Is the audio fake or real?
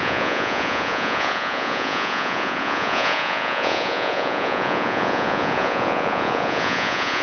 fake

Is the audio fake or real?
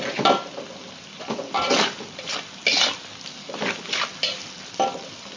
real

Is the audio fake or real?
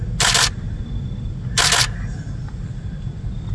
real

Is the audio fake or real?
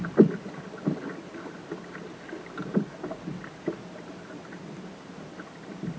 real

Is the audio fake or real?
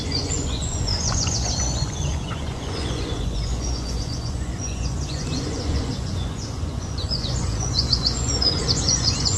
fake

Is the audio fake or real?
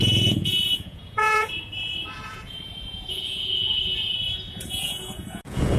fake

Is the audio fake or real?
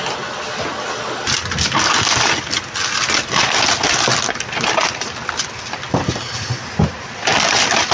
real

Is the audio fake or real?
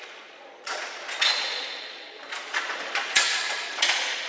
fake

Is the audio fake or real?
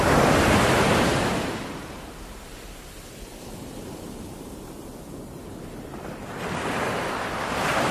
real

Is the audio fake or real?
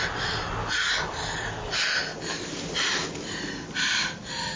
real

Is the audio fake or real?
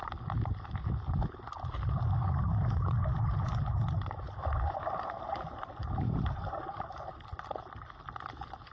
real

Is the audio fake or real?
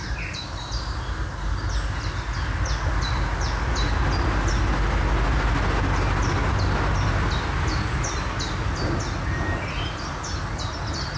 real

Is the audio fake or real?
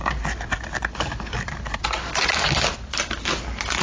real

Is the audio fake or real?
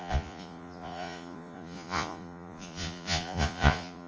fake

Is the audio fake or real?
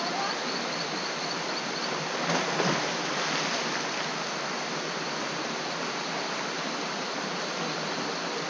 real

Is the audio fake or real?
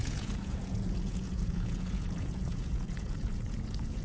fake